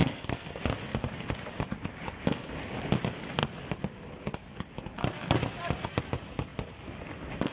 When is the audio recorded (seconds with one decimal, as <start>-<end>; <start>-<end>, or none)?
0.6-7.5